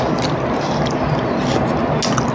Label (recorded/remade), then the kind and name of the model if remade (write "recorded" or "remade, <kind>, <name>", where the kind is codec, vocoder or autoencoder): recorded